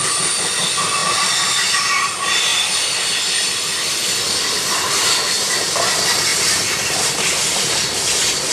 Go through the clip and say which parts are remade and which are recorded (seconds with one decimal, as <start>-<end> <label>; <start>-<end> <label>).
0.0-6.3 recorded; 6.3-7.3 remade; 7.3-8.5 recorded